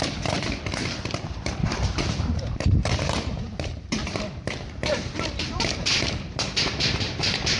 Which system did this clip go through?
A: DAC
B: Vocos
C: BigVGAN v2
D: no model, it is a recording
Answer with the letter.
C